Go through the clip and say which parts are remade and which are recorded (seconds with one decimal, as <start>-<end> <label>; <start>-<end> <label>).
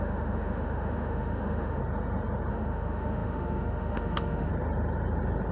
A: 0.0-1.8 remade; 1.8-2.5 recorded; 2.5-4.5 remade; 4.5-5.5 recorded